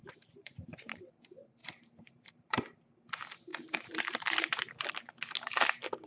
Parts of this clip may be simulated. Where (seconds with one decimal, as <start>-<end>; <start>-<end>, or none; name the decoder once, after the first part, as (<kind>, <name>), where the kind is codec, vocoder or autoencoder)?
0.0-1.0 (vocoder, BigVGAN v2); 1.6-2.6; 3.5-4.9